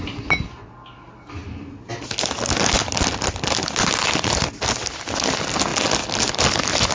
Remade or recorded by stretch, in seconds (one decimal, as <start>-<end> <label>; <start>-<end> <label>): 0.0-6.9 recorded